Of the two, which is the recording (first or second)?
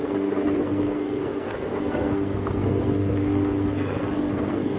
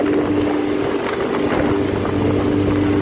second